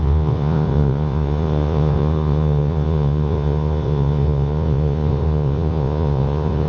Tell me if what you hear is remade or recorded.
remade